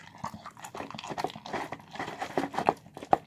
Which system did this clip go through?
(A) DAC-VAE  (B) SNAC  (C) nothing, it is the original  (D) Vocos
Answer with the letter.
C